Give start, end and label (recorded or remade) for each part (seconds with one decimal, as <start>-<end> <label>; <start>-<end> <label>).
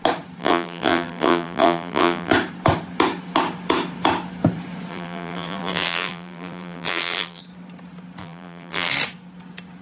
0.0-0.4 recorded; 0.4-2.3 remade; 2.3-4.9 recorded; 4.9-7.4 remade; 7.4-8.2 recorded; 8.2-8.9 remade; 8.9-9.8 recorded